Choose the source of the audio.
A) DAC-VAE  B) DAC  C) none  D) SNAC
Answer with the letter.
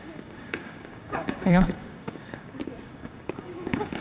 B